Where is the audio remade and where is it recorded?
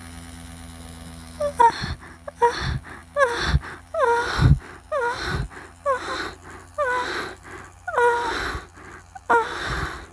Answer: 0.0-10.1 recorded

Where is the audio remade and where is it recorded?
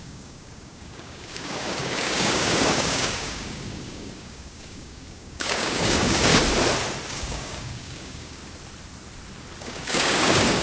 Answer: 0.0-6.3 remade; 6.3-7.1 recorded; 7.1-8.4 remade; 8.4-9.6 recorded; 9.6-10.6 remade